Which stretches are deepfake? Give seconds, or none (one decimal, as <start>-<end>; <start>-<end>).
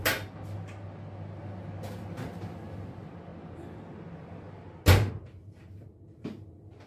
none